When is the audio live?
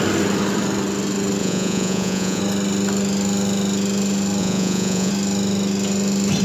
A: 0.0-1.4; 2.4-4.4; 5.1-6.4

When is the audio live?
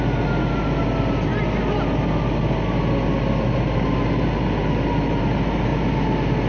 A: 0.0-6.5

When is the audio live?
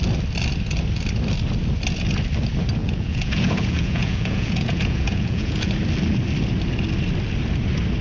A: 0.0-2.8; 5.7-8.0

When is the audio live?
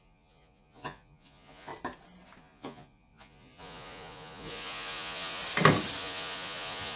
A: 1.7-2.4; 5.4-6.0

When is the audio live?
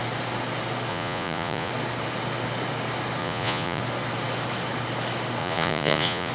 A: 0.0-0.9; 1.7-3.2; 3.8-5.4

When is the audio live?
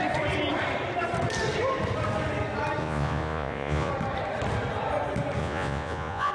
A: 0.0-2.8; 3.9-5.4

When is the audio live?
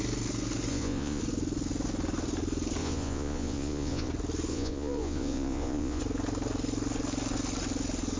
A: 0.0-0.7; 1.2-2.8; 4.1-4.5; 6.0-8.2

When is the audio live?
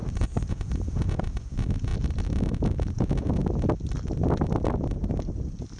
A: 0.0-0.5; 1.9-2.9; 3.4-5.8